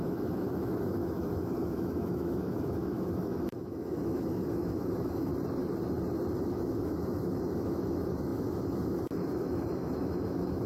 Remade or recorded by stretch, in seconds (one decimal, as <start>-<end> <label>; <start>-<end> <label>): 0.0-5.3 remade; 5.3-6.4 recorded; 6.4-10.7 remade